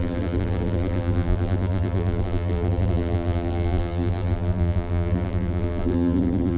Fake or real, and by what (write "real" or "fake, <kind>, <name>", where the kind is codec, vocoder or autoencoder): fake, vocoder, BigVGAN v2